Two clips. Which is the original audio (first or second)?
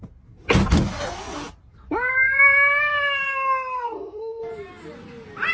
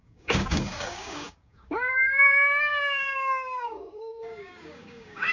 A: first